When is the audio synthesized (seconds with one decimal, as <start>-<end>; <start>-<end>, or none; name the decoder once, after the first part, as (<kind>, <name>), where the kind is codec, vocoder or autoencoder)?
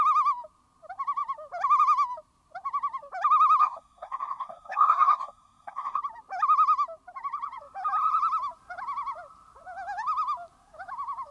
3.6-6.0 (codec, SNAC)